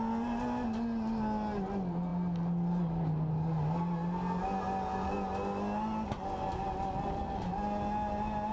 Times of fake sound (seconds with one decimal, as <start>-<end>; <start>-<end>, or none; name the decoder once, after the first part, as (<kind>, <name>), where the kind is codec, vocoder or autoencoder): none